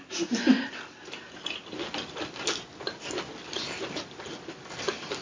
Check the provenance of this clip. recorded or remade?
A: recorded